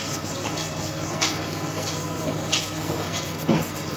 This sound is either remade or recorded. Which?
remade